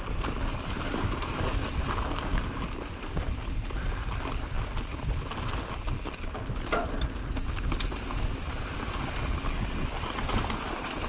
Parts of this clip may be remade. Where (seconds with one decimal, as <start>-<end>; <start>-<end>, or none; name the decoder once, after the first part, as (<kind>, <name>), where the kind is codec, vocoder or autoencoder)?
none